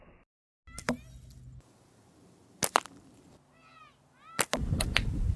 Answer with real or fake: real